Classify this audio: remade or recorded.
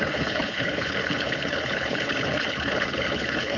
remade